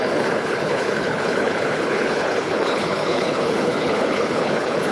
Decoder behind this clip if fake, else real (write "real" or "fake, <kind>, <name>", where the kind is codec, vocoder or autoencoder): fake, codec, HILCodec